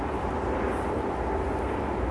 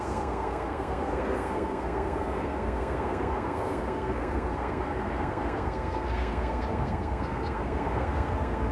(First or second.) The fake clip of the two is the second